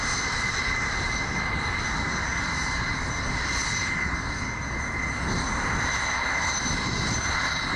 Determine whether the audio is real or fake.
real